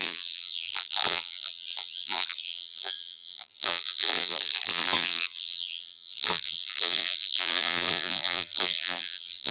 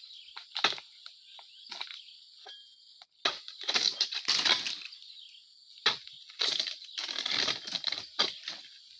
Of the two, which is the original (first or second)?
second